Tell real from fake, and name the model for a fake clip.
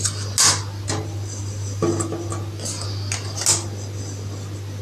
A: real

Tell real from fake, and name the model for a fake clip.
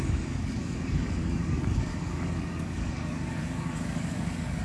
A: fake, codec, DAC